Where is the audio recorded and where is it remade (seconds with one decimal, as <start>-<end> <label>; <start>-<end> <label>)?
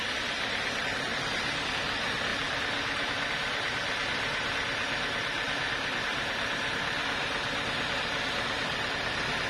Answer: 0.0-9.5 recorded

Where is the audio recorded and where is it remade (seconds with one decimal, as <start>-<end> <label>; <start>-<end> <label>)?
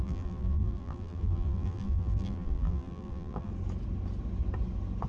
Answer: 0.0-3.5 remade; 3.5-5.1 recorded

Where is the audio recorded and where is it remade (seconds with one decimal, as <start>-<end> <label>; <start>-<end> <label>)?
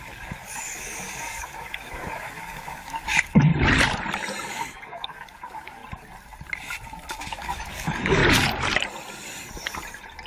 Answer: 0.0-3.5 remade; 3.5-4.5 recorded; 4.5-5.8 remade; 5.8-7.2 recorded; 7.2-8.2 remade; 8.2-10.3 recorded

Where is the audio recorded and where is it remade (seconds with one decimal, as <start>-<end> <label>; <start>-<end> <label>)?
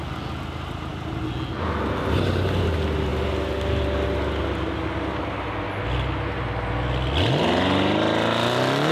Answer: 0.0-8.9 recorded